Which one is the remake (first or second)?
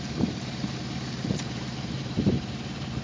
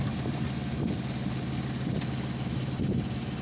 first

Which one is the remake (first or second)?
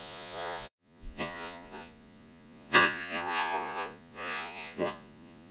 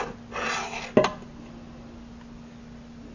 first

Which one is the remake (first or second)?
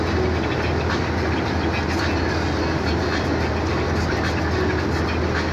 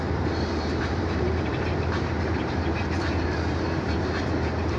second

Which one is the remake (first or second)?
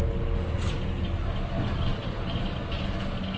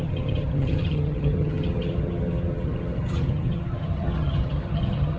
second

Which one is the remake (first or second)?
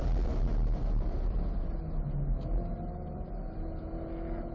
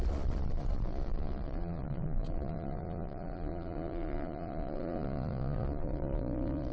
second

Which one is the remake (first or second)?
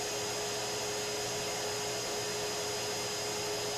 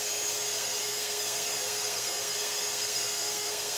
second